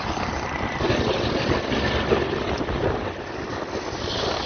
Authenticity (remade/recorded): recorded